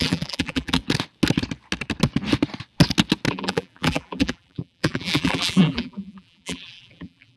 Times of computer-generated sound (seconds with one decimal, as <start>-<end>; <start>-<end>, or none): 0.0-0.8; 3.3-7.4